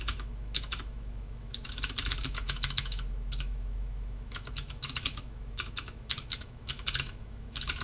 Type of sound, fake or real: fake